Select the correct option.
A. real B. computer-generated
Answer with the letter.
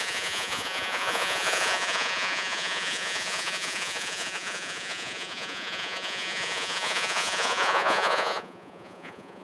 B